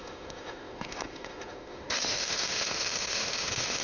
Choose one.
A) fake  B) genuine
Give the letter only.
A